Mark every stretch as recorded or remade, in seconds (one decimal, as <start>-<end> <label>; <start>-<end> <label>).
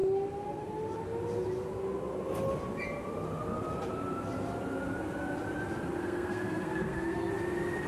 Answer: 0.0-6.0 recorded; 6.0-7.3 remade; 7.3-7.9 recorded